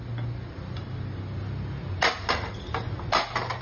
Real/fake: real